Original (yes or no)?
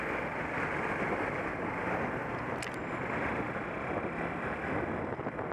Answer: yes